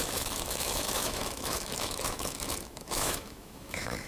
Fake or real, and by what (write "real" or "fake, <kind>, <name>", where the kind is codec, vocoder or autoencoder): fake, autoencoder, DAC-VAE